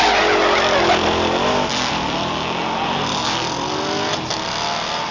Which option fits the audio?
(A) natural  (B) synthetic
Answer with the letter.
A